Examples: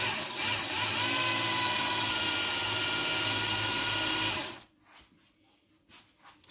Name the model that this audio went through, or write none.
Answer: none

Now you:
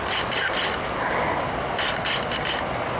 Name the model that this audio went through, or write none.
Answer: none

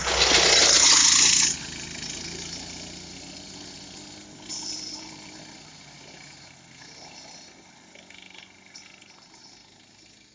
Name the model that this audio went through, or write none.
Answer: none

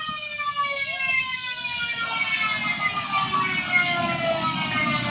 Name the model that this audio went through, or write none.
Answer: none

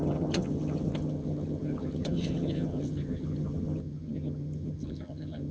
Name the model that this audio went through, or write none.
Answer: vocoder, HiFi-GAN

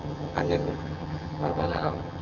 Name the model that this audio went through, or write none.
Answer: vocoder, HiFi-GAN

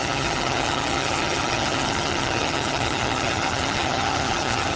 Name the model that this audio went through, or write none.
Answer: vocoder, HiFi-GAN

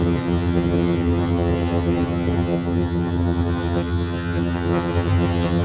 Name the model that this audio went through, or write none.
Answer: vocoder, HiFi-GAN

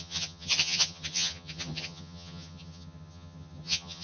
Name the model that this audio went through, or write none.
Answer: vocoder, HiFi-GAN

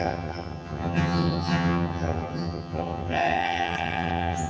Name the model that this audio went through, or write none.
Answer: vocoder, HiFi-GAN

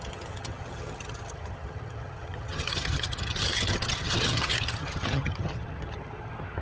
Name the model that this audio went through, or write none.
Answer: vocoder, HiFi-GAN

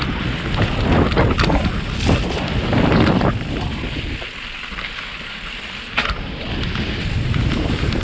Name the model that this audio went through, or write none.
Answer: none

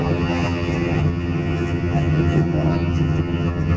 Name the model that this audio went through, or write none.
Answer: vocoder, HiFi-GAN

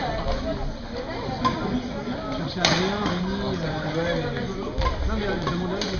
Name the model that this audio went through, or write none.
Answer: none